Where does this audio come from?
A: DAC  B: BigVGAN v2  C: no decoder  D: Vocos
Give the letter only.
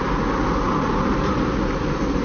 C